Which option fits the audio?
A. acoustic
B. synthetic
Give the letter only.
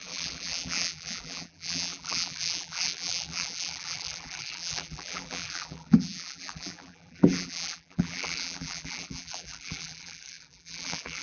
B